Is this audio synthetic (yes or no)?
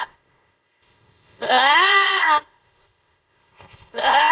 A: yes